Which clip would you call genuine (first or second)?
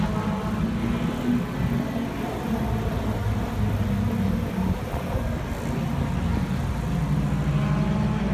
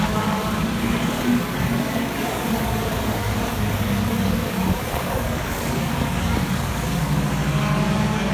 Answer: first